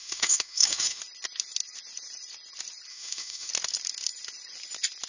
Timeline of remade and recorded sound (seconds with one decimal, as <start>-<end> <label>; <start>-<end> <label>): 0.0-1.0 remade; 1.0-2.9 recorded; 2.9-3.5 remade; 3.5-5.1 recorded